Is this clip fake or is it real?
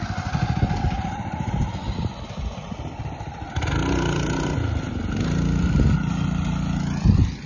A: real